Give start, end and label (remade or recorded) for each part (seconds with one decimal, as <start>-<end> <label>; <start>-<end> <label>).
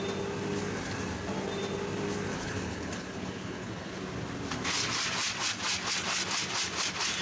0.0-2.3 recorded; 2.3-4.0 remade; 4.0-7.2 recorded